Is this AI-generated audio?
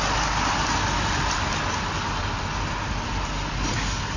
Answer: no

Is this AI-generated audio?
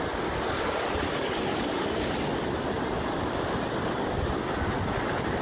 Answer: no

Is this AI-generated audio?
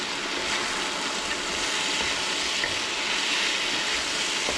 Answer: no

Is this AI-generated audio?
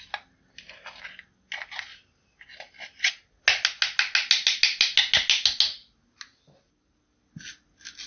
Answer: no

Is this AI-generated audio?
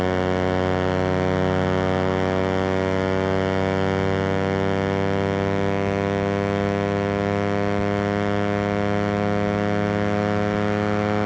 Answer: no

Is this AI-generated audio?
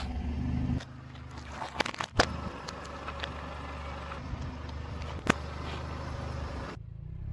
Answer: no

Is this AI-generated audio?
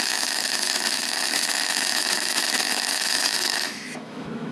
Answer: yes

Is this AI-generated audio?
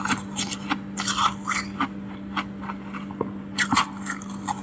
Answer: no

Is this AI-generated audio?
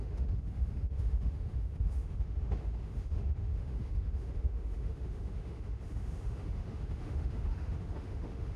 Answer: yes